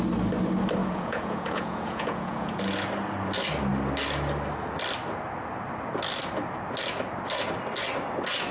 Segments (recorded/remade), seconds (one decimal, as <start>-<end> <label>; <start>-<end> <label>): 0.0-0.8 recorded; 0.8-2.6 remade; 2.6-8.5 recorded